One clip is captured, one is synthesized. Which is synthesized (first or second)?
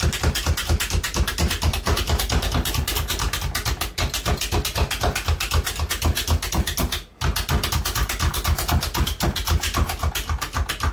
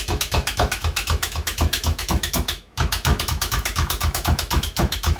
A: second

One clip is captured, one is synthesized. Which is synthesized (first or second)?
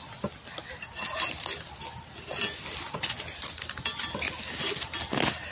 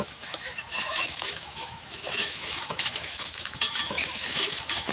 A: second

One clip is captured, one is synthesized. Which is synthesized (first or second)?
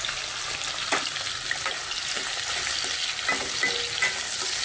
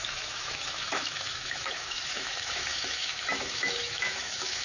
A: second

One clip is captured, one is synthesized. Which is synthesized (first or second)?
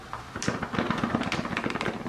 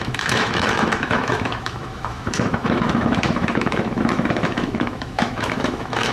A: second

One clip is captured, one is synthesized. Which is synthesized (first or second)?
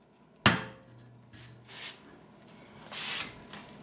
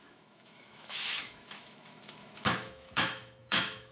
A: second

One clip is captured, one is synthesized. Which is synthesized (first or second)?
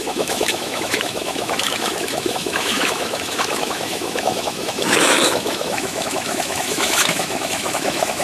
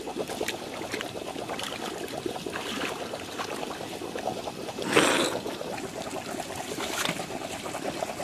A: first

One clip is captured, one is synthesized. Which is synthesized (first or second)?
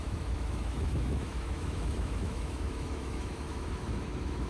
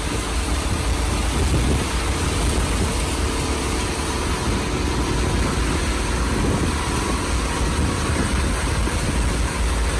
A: first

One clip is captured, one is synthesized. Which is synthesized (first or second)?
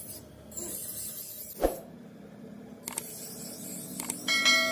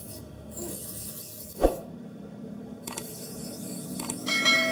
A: second